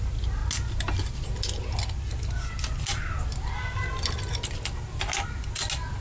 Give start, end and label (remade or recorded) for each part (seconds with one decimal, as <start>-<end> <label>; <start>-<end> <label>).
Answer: 0.0-6.0 recorded